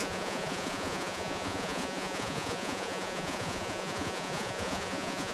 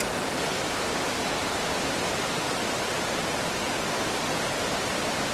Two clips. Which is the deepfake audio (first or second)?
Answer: first